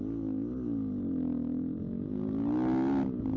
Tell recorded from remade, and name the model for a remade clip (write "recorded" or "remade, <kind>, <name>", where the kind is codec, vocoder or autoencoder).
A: recorded